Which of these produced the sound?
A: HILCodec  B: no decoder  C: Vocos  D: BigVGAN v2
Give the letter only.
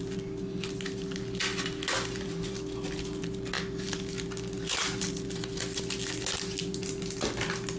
B